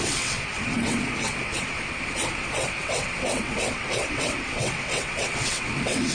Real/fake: fake